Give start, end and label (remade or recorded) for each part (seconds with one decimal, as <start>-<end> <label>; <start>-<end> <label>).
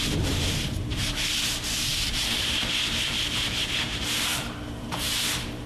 0.0-5.7 remade